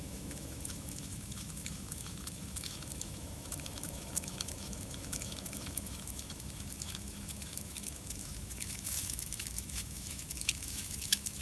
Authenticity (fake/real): fake